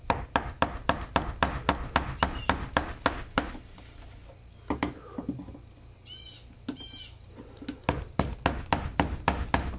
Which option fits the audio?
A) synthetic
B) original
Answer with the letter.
B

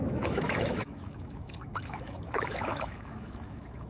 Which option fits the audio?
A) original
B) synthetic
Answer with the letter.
B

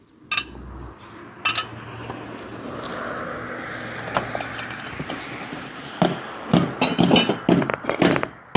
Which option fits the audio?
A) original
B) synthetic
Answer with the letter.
A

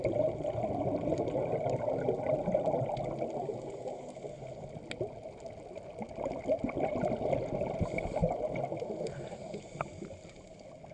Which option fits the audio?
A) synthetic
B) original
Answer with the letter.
B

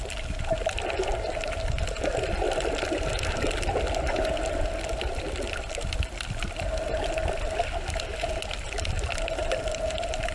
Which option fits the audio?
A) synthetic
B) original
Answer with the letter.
B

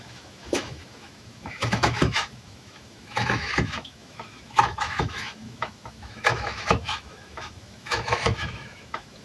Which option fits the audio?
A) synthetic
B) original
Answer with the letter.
A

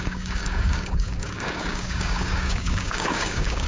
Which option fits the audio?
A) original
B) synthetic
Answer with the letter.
B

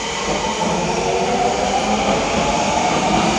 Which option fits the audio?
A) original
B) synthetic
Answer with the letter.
A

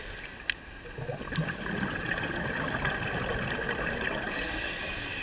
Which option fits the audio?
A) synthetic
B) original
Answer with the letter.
B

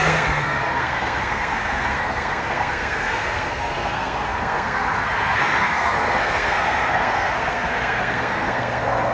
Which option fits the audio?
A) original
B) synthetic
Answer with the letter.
B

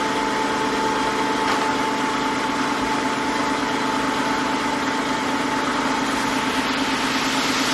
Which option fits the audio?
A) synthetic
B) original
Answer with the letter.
B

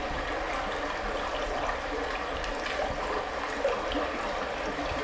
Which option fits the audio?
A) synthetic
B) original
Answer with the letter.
B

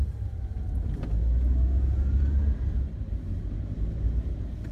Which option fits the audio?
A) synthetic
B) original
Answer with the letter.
B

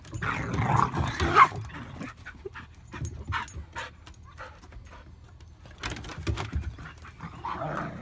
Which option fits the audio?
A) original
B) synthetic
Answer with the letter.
A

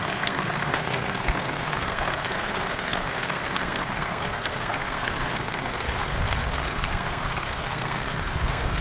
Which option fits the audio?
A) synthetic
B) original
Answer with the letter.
A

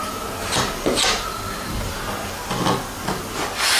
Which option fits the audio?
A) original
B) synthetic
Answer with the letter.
A